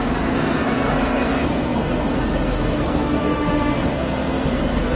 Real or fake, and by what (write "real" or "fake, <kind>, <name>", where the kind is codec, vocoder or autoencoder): fake, codec, SNAC